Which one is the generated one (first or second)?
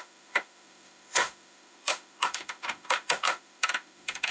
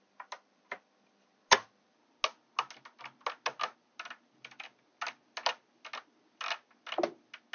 first